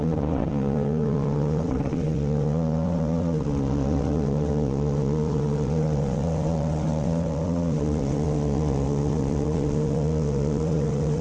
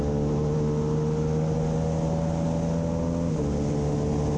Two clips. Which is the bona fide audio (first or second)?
second